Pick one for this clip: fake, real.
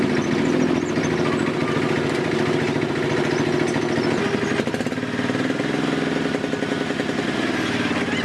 real